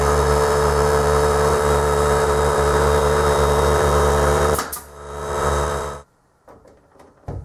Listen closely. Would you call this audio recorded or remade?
remade